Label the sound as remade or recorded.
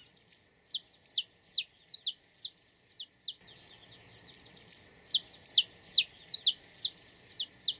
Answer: recorded